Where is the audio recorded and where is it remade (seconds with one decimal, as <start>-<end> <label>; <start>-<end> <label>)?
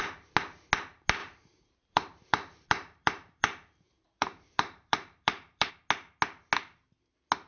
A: 0.0-1.2 recorded; 1.2-5.7 remade; 5.7-7.5 recorded